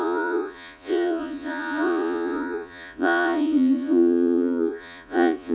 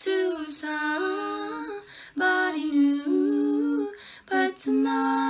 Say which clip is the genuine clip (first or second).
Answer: second